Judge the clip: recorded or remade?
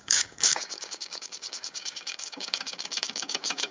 remade